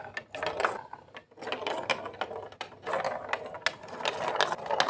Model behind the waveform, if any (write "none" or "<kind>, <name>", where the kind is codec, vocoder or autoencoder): none